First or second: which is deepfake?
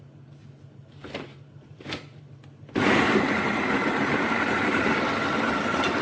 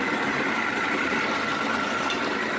first